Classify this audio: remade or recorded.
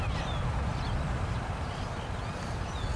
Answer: recorded